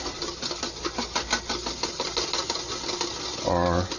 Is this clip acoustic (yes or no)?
yes